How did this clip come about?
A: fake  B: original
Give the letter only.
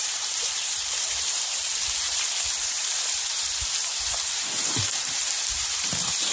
A